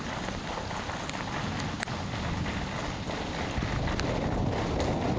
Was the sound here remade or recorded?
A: recorded